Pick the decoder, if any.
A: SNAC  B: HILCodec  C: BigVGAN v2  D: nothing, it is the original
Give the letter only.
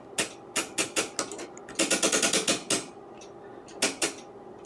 D